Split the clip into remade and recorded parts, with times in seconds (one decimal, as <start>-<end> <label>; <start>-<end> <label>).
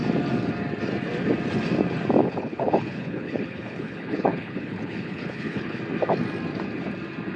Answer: 0.0-2.2 recorded; 2.2-5.8 remade; 5.8-7.4 recorded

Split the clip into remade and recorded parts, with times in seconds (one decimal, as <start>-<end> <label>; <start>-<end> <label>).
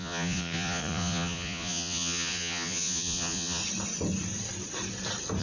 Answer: 0.0-3.6 remade; 3.6-5.4 recorded